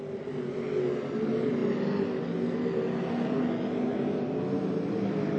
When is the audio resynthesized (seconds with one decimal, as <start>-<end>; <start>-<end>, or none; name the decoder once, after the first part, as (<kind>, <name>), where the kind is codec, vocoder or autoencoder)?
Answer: none